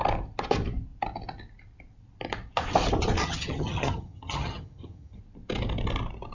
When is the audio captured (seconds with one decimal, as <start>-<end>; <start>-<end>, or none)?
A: 0.0-3.2; 5.2-6.3